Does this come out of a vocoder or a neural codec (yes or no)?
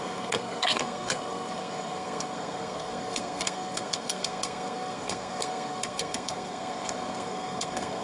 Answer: yes